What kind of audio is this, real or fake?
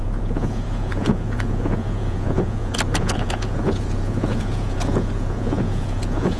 fake